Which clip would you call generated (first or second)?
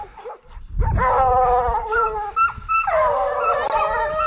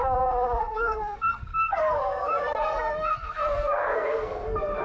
second